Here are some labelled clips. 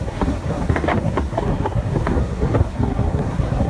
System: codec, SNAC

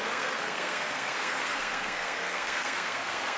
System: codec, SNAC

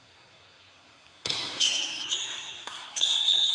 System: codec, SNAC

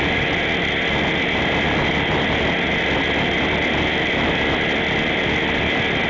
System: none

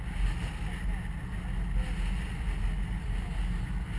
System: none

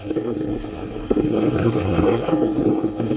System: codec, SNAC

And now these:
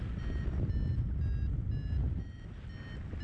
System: none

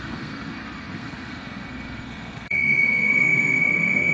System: codec, SNAC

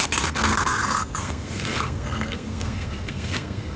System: codec, SNAC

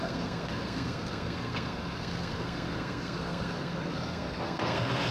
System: codec, SNAC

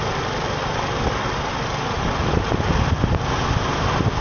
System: none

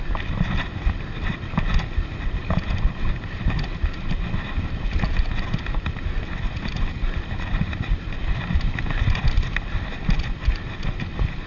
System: none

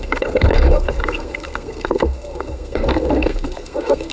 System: codec, SNAC